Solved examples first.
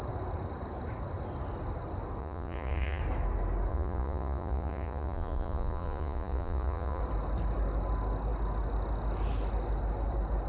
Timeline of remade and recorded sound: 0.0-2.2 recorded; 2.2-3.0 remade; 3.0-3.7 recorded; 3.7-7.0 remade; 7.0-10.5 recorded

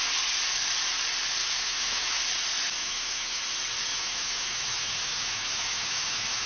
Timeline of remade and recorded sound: 0.0-1.4 recorded; 1.4-2.2 remade; 2.2-2.8 recorded; 2.8-3.4 remade; 3.4-3.9 recorded; 3.9-6.5 remade

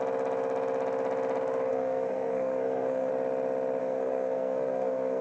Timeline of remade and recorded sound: 0.0-1.7 recorded; 1.7-3.1 remade; 3.1-3.8 recorded; 3.8-5.2 remade

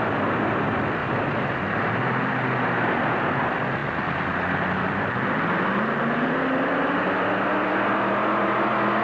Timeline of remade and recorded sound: 0.0-1.0 recorded; 1.0-1.8 remade; 1.8-9.0 recorded

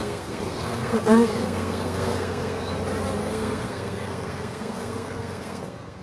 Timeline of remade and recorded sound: 0.0-2.7 remade; 2.7-3.2 recorded; 3.2-6.0 remade

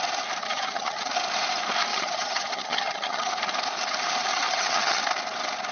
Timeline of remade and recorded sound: 0.0-0.4 recorded; 0.4-1.1 remade; 1.1-1.9 recorded; 1.9-3.4 remade; 3.4-4.3 recorded; 4.3-5.0 remade; 5.0-5.7 recorded